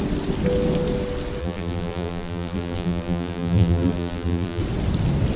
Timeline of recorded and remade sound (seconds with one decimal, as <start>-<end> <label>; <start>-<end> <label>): 0.0-1.4 recorded; 1.4-4.6 remade; 4.6-5.4 recorded